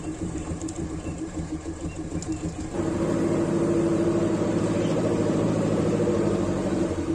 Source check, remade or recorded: remade